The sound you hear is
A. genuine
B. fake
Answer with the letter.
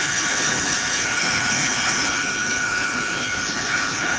B